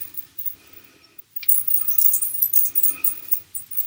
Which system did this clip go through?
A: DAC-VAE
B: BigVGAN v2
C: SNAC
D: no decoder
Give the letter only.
B